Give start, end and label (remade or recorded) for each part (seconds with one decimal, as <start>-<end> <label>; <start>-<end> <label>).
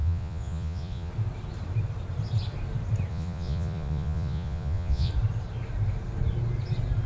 0.0-1.1 remade; 1.1-3.1 recorded; 3.1-5.1 remade; 5.1-7.1 recorded